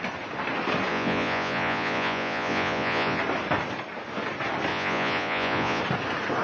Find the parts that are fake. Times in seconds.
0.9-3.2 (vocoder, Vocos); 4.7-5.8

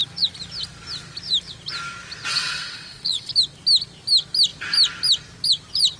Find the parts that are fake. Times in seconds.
2.3-3.3 (vocoder, WaveNeXt)